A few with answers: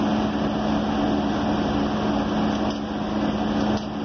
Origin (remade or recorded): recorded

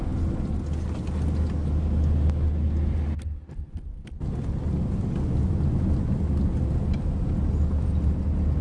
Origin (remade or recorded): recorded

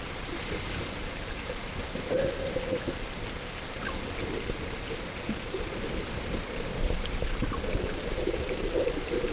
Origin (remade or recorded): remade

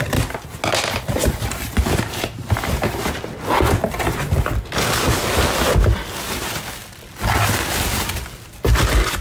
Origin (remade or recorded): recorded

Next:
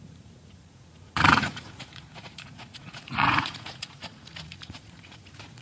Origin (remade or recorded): remade